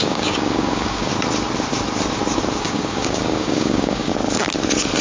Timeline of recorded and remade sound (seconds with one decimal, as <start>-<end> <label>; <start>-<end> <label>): 0.0-1.1 remade; 1.1-2.6 recorded; 2.6-4.1 remade; 4.1-5.0 recorded